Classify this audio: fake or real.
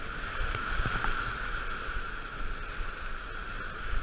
real